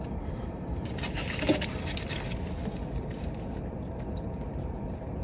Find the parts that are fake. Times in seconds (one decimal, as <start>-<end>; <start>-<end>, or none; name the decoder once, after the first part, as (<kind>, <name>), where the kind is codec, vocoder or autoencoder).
0.0-1.5 (vocoder, BigVGAN v2); 4.6-5.2